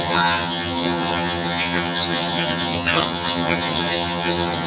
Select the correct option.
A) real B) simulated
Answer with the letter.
B